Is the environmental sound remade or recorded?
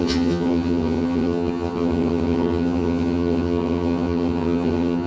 remade